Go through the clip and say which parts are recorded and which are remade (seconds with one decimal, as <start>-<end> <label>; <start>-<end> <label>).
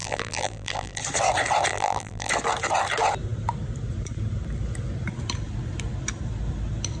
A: 0.0-1.0 remade; 1.0-1.7 recorded; 1.7-2.3 remade; 2.3-7.0 recorded